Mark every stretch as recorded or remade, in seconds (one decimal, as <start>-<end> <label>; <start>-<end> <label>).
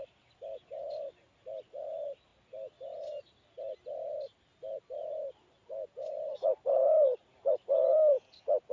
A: 0.0-1.2 recorded; 1.2-2.3 remade; 2.3-5.5 recorded; 5.5-7.9 remade; 7.9-8.7 recorded